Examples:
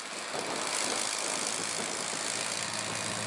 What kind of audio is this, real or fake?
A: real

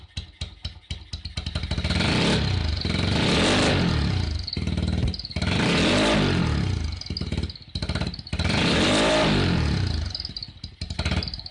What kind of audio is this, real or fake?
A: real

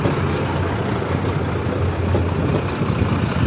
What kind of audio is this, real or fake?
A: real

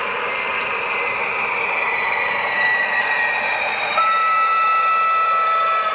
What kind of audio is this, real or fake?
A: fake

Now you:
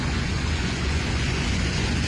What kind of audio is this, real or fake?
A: fake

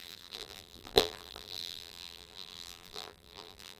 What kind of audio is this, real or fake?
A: fake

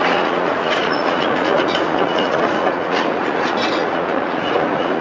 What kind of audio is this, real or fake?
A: fake